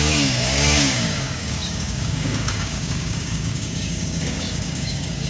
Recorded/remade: remade